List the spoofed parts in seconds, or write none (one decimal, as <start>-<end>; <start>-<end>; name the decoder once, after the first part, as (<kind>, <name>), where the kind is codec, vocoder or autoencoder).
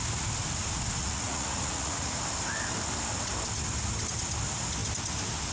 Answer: 1.0-2.2 (vocoder, Vocos)